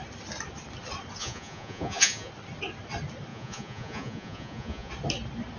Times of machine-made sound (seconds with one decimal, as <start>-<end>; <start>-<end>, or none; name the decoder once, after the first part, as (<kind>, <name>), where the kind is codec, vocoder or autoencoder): 1.2-2.3 (vocoder, Vocos); 3.3-4.9